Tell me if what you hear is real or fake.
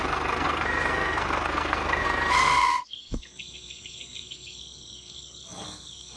fake